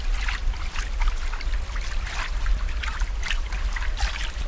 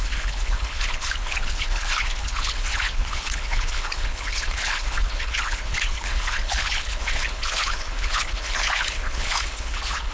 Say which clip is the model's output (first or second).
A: second